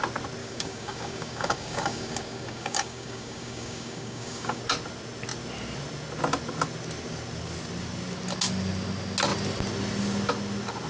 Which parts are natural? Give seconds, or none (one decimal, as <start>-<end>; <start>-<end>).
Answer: 0.0-0.4; 4.6-10.9